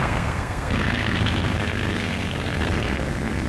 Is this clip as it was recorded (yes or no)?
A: no